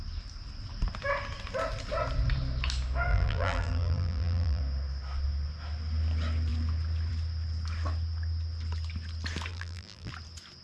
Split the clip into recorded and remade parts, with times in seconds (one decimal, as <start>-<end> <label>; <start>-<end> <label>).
0.0-3.1 recorded; 3.1-4.6 remade; 4.6-9.5 recorded; 9.5-10.1 remade; 10.1-10.6 recorded